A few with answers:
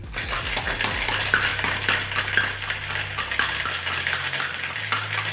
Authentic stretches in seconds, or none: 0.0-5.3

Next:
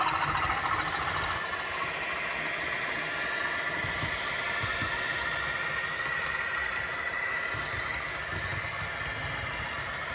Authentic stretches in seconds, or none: 0.0-10.1

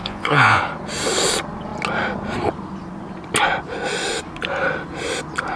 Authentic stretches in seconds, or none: 0.6-5.6

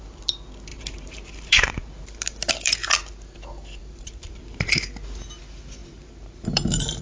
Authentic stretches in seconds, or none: 0.0-0.7; 2.9-3.8; 4.9-5.8

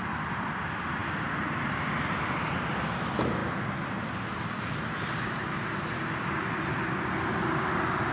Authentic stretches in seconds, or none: 0.0-8.1

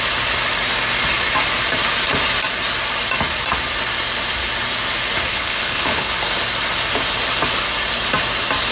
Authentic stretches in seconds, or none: 0.0-5.3; 6.1-8.7

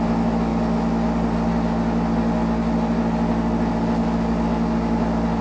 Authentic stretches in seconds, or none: 0.0-5.4

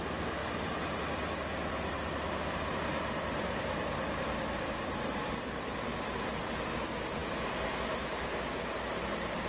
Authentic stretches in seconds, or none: 0.0-9.5